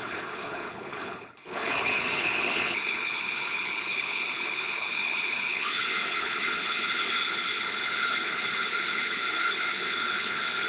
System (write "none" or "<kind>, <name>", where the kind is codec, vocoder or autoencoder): codec, HILCodec